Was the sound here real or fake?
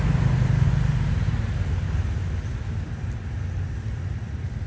real